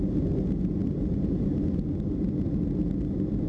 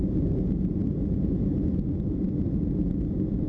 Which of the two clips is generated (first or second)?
second